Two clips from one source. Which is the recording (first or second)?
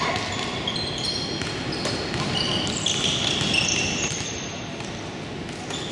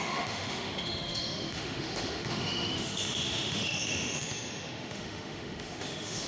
first